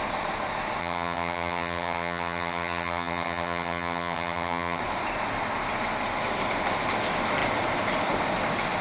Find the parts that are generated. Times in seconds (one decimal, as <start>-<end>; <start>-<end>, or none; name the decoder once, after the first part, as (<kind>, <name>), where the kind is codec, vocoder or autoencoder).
0.8-4.8 (vocoder, HiFi-GAN)